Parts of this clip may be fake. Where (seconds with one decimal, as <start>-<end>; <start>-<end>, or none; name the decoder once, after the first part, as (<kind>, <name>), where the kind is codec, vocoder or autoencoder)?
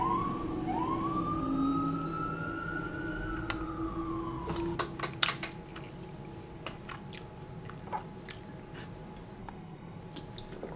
9.4-10.0 (codec, SNAC)